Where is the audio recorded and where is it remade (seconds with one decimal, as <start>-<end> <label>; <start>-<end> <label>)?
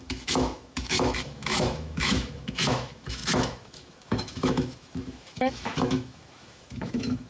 0.0-7.3 remade